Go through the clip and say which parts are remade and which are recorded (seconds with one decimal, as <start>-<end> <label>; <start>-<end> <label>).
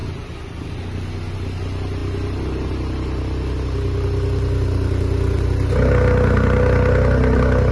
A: 0.0-7.7 recorded